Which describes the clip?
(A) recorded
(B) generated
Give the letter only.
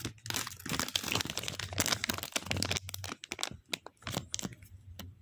A